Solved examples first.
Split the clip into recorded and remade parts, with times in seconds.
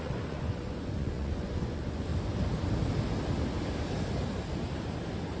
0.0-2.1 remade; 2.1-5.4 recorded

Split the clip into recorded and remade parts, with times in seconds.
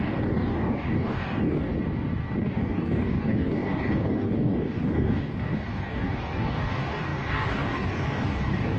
0.0-1.7 remade; 1.7-2.4 recorded; 2.4-8.8 remade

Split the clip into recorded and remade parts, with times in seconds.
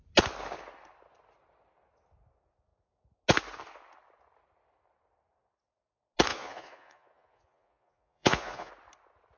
0.0-6.3 recorded; 6.3-8.7 remade; 8.7-9.4 recorded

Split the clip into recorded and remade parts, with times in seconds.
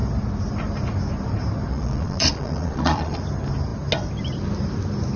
0.0-1.7 recorded; 1.7-3.2 remade; 3.2-5.2 recorded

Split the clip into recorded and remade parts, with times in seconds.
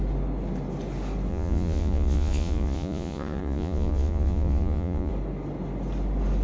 0.0-1.3 recorded; 1.3-5.1 remade; 5.1-6.4 recorded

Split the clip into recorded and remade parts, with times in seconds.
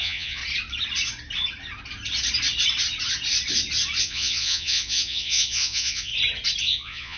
0.0-0.4 remade; 0.4-4.0 recorded; 4.0-6.1 remade; 6.1-6.6 recorded; 6.6-7.2 remade